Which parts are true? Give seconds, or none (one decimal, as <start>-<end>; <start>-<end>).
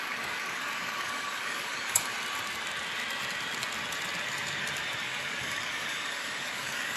2.1-5.0